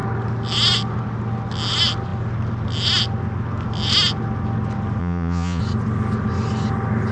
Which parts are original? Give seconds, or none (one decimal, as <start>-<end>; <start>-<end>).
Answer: 0.0-5.0; 5.6-7.1